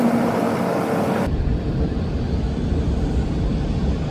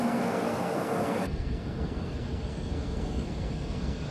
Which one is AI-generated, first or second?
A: second